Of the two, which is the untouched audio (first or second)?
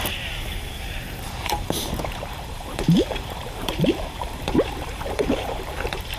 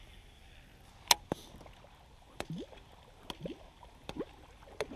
second